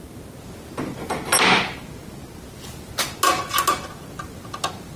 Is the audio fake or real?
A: real